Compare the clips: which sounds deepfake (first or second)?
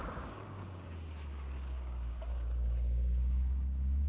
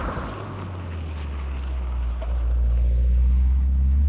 first